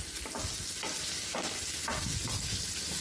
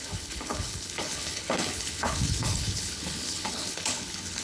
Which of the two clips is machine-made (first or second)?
second